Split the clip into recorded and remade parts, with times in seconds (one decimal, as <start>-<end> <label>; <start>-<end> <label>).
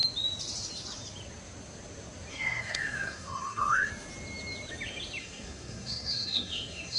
0.0-2.3 recorded; 2.3-3.9 remade; 3.9-5.2 recorded; 5.2-7.0 remade